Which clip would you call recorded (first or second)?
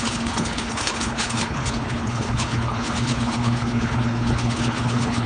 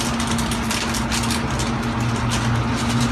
second